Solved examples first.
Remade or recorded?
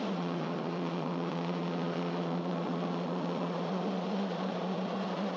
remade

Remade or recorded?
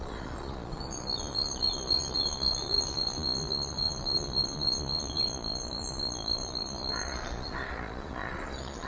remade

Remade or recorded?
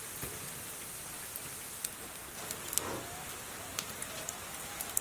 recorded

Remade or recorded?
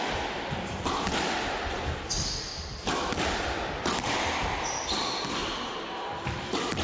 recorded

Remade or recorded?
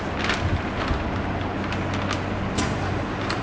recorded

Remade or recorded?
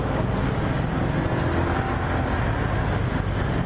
recorded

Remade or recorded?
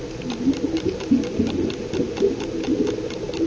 recorded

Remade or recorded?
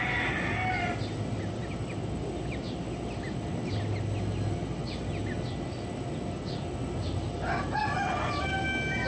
recorded